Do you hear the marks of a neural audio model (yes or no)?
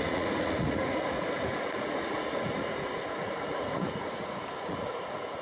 yes